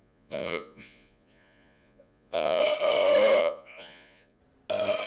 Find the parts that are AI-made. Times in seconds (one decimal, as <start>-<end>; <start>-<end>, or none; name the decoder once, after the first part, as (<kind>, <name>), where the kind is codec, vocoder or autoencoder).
0.0-2.6 (vocoder, Vocos); 3.4-4.4